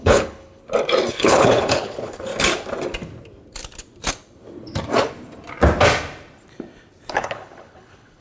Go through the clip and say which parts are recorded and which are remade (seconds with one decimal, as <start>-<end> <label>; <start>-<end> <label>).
0.0-0.6 remade; 0.6-1.1 recorded; 1.1-2.3 remade; 2.3-7.1 recorded; 7.1-8.2 remade